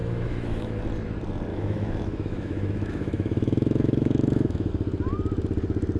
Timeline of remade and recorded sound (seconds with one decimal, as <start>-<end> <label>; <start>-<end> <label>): 0.0-0.8 remade; 0.8-1.5 recorded; 1.5-4.7 remade; 4.7-6.0 recorded